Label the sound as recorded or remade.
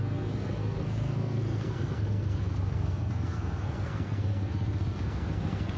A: remade